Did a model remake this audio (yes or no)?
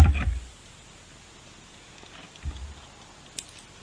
no